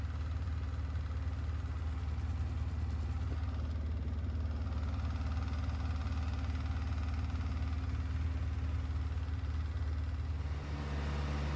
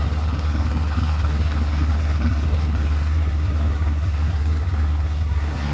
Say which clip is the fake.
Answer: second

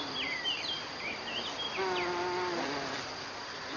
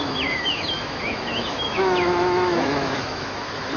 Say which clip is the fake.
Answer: second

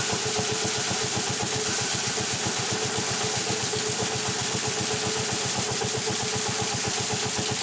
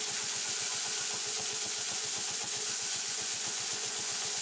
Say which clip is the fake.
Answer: second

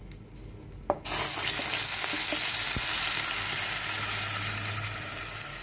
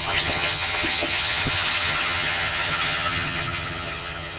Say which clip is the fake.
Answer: second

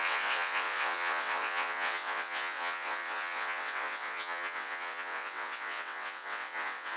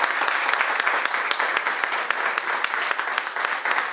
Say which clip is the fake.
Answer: first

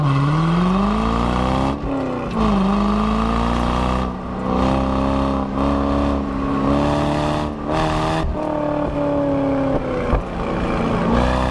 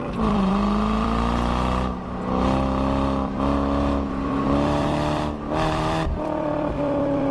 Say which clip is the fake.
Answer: second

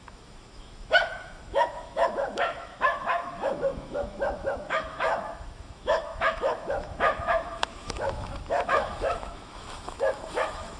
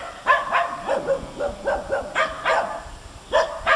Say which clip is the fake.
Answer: first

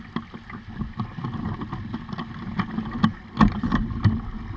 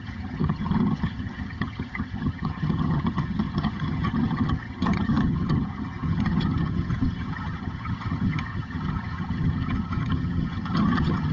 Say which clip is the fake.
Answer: second